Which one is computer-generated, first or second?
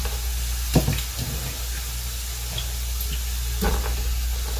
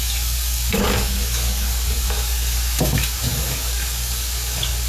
second